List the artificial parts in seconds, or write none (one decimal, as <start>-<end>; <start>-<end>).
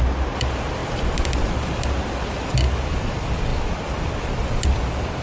none